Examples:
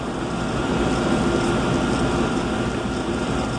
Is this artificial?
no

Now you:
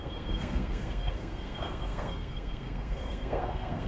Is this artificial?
yes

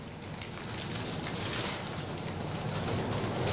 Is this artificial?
no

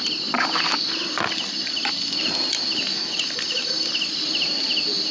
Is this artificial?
no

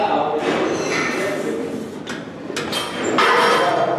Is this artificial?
no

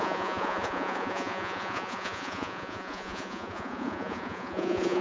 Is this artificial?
yes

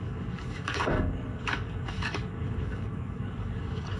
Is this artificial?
yes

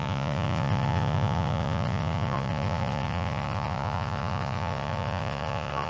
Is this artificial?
yes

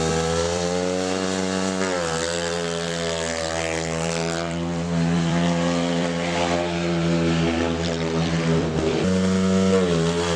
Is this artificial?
yes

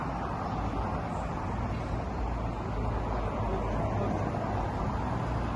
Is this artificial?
no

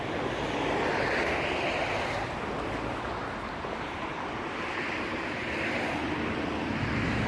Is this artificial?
no